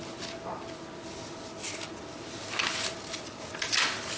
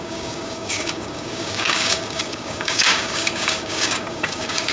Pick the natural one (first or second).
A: first